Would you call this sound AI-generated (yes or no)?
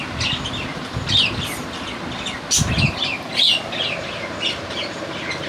no